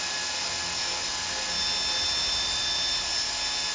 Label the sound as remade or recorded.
recorded